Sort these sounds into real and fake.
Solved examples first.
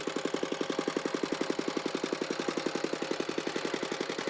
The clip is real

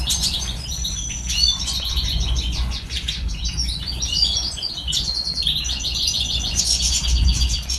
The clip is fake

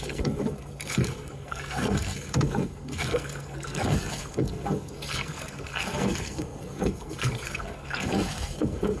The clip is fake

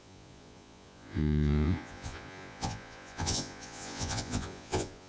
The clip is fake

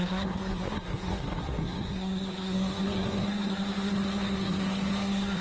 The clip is fake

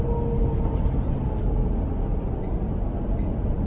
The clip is real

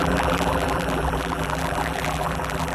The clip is fake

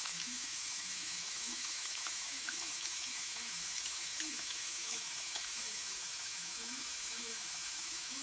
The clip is fake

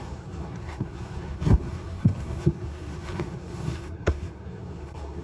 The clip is fake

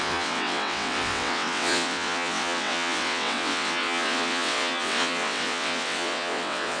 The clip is fake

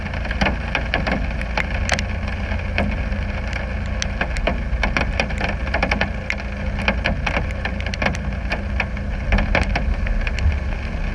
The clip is real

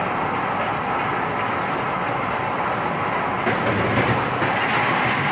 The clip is real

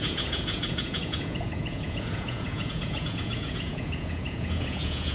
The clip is fake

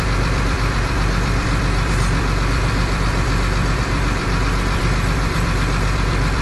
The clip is fake